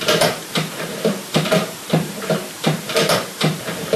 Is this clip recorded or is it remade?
remade